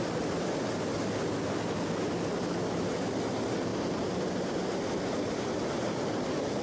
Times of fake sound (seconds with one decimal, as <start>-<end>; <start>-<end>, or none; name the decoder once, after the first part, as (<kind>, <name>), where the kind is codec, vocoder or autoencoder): none